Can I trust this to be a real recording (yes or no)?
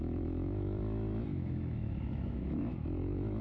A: no